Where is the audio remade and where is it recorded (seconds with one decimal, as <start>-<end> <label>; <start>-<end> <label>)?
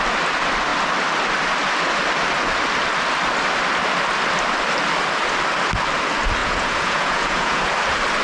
0.0-6.4 recorded; 6.4-7.7 remade; 7.7-8.2 recorded